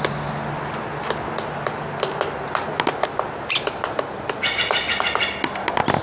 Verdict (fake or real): real